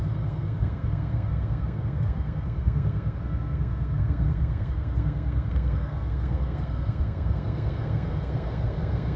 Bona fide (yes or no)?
no